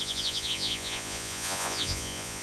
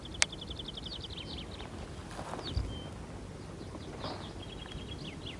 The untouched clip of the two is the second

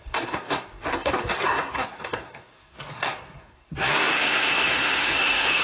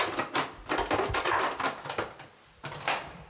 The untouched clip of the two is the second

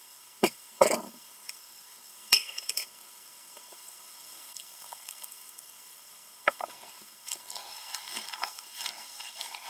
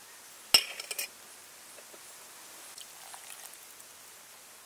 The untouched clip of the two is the second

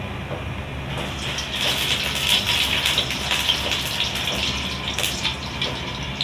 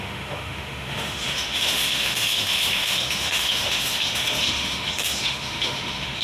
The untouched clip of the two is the first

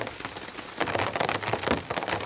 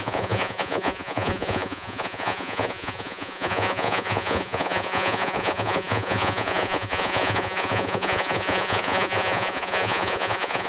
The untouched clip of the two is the first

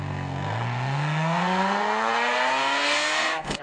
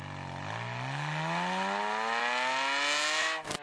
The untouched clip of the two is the second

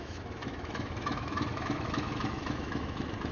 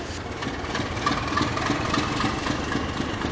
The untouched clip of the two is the second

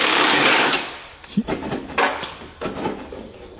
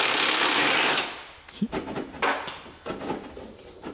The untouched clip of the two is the second